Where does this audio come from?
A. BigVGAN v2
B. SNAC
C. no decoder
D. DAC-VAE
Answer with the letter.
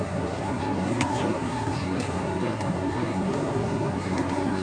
B